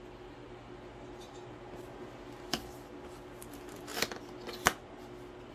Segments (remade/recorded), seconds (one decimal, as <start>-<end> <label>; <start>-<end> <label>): 0.0-5.5 recorded